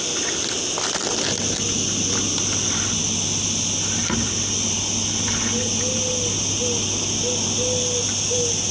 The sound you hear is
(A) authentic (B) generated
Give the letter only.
A